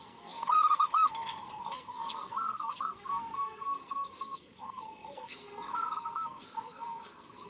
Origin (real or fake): fake